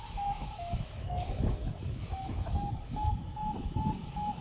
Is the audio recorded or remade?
remade